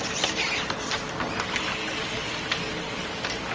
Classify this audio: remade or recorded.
recorded